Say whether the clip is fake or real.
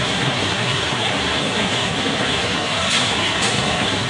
fake